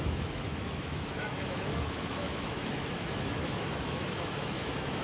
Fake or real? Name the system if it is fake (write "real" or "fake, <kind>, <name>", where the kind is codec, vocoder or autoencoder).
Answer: fake, autoencoder, DAC-VAE